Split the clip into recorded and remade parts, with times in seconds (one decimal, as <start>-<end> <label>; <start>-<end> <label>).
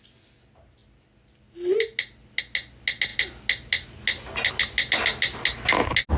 0.0-6.2 recorded